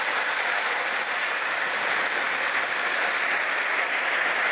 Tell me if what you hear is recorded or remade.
recorded